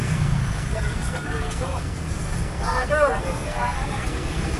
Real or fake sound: fake